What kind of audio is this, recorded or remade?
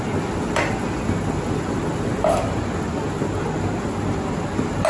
recorded